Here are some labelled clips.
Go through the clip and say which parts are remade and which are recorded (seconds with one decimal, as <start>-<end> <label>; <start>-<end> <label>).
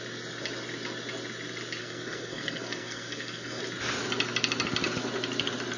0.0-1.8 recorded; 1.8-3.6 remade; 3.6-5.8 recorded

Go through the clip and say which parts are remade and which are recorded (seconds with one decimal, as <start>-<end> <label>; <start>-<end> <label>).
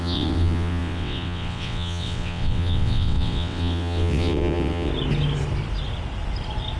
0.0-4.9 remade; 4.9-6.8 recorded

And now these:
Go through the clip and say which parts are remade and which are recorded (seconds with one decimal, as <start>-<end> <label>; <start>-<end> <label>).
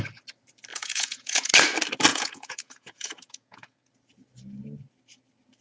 0.0-0.7 recorded; 0.7-1.5 remade; 1.5-2.1 recorded; 2.1-3.9 remade; 3.9-5.6 recorded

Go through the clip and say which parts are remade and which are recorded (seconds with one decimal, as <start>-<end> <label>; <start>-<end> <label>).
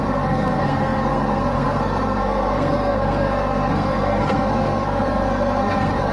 0.0-6.1 remade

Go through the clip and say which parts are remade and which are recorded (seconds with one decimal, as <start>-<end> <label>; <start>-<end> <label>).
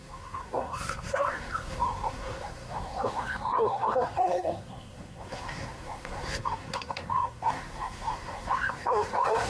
0.0-9.5 remade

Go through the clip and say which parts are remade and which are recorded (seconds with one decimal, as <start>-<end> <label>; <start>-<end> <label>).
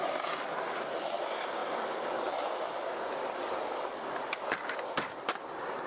0.0-5.9 recorded